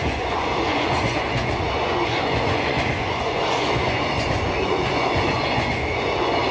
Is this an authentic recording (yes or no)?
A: no